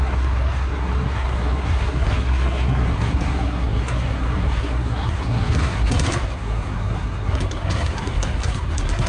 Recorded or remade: remade